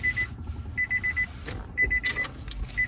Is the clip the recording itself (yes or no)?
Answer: yes